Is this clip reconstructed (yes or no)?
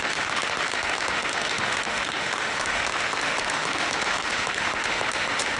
yes